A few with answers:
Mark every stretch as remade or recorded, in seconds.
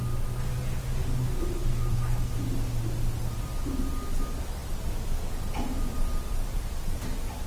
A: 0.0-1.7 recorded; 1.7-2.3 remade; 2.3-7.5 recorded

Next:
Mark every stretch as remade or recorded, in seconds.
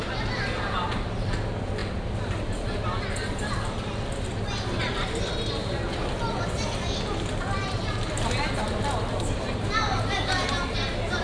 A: 0.0-11.2 recorded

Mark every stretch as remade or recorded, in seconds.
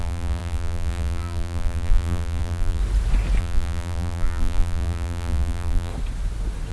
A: 0.0-2.8 remade; 2.8-3.4 recorded; 3.4-5.9 remade; 5.9-6.7 recorded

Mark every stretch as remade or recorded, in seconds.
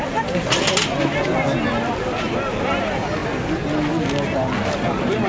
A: 0.0-5.3 recorded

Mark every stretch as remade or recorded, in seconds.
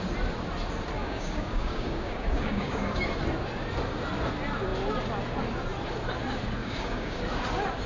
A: 0.0-1.0 recorded; 1.0-3.1 remade; 3.1-6.6 recorded; 6.6-7.2 remade; 7.2-7.9 recorded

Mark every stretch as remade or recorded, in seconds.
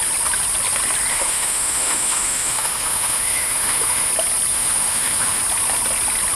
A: 0.0-1.1 recorded; 1.1-4.1 remade; 4.1-4.5 recorded; 4.5-5.4 remade; 5.4-6.3 recorded